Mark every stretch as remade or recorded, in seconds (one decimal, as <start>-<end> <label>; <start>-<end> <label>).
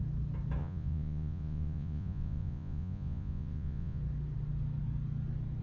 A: 0.0-0.6 recorded; 0.6-4.0 remade; 4.0-5.6 recorded